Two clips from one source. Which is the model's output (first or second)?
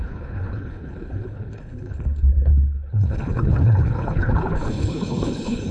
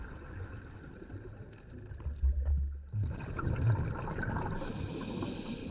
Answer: first